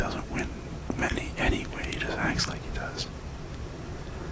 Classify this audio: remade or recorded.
recorded